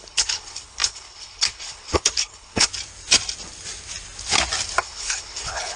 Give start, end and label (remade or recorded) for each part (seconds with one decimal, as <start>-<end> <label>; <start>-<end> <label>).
0.0-2.7 remade; 2.7-4.8 recorded; 4.8-5.8 remade